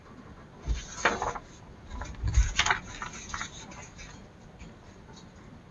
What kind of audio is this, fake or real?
real